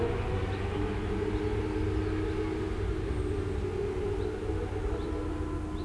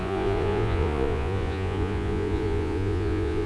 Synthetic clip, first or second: second